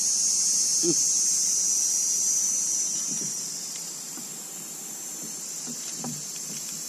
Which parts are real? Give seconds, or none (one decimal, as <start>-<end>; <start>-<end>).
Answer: none